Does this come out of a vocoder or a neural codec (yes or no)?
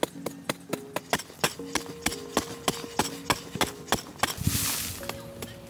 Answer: no